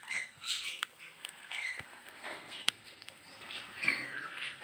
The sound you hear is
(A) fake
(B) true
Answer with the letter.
A